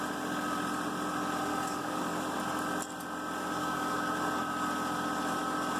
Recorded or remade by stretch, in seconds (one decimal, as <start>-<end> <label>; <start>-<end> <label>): 0.0-1.5 recorded; 1.5-2.0 remade; 2.0-3.6 recorded; 3.6-4.1 remade; 4.1-5.8 recorded